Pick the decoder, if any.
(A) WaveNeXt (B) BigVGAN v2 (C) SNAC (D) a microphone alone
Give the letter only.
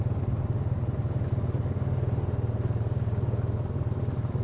D